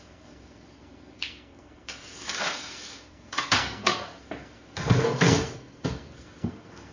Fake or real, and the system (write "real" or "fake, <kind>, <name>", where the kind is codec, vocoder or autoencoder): fake, codec, SNAC